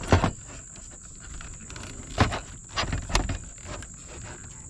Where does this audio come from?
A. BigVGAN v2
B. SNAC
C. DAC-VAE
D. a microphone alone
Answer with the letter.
D